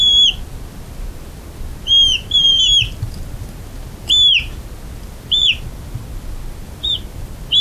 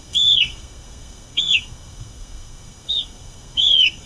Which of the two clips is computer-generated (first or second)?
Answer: second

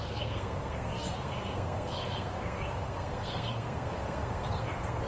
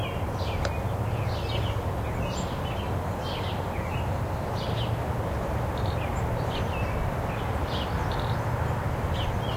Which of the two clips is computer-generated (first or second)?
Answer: first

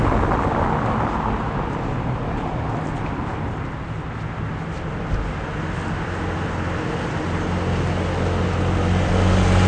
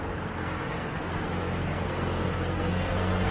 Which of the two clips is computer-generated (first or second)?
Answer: second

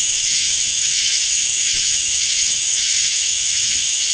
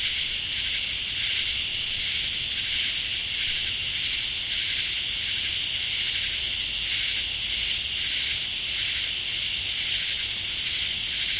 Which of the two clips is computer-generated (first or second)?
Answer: first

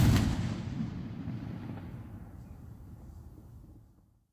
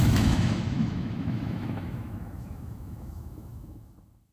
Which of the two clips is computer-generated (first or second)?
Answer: second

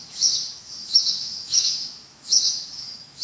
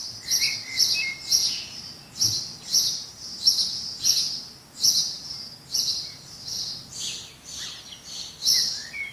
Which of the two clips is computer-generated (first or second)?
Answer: first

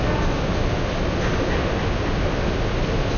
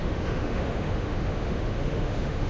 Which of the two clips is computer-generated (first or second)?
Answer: second